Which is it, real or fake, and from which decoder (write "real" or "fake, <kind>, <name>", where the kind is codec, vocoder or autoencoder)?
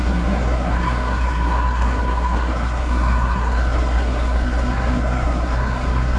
fake, codec, SNAC